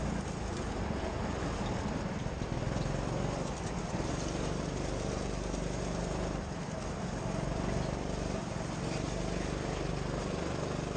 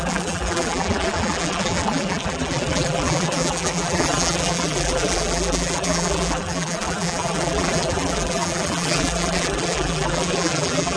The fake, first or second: second